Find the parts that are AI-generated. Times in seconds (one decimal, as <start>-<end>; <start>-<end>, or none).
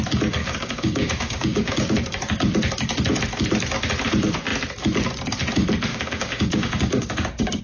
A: 0.4-1.7; 5.9-7.6